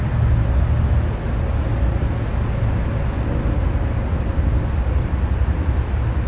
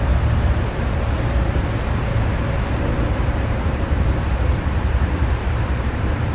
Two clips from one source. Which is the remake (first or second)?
second